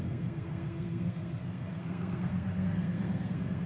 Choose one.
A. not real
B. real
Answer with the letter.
A